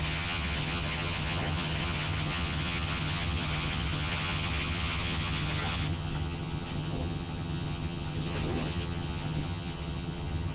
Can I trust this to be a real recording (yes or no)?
no